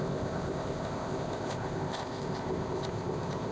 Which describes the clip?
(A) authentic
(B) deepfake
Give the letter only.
B